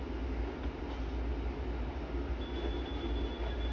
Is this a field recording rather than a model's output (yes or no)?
yes